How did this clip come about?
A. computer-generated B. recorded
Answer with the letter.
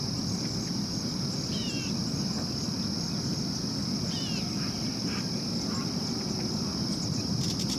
B